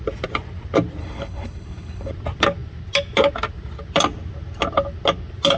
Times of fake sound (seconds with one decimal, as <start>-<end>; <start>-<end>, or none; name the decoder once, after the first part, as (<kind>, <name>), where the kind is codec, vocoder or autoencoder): 1.0-2.1 (codec, HILCodec)